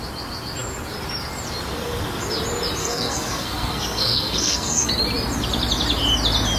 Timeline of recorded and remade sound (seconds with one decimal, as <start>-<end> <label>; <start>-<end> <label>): 0.0-2.8 recorded; 2.8-4.9 remade; 4.9-6.6 recorded